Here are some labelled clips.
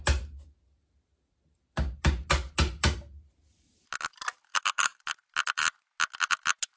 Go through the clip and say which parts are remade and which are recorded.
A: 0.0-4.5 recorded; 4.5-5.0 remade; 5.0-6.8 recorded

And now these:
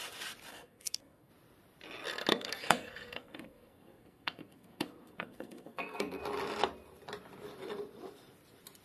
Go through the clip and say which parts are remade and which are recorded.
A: 0.0-0.5 recorded; 0.5-1.3 remade; 1.3-2.3 recorded; 2.3-6.2 remade; 6.2-8.8 recorded

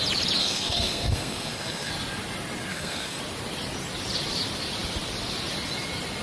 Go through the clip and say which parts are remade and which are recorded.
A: 0.0-0.4 recorded; 0.4-1.9 remade; 1.9-2.7 recorded; 2.7-3.2 remade; 3.2-6.2 recorded

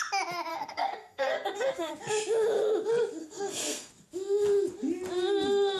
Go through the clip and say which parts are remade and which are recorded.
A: 0.0-0.5 recorded; 0.5-1.9 remade; 1.9-3.2 recorded; 3.2-3.9 remade; 3.9-5.8 recorded

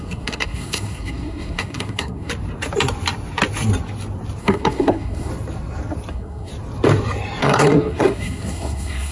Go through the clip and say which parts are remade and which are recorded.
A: 0.0-2.3 remade; 2.3-4.4 recorded; 4.4-5.3 remade; 5.3-6.1 recorded; 6.1-6.5 remade; 6.5-7.4 recorded; 7.4-9.1 remade

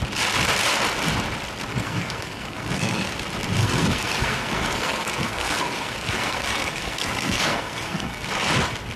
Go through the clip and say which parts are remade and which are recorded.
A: 0.0-1.7 recorded; 1.7-3.1 remade; 3.1-3.6 recorded; 3.6-8.3 remade; 8.3-9.0 recorded

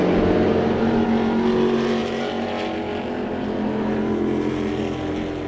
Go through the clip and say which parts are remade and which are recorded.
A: 0.0-5.5 recorded